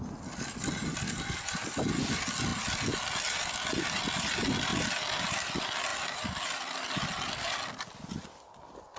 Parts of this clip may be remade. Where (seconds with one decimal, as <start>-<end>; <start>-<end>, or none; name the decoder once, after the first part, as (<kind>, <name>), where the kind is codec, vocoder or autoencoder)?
none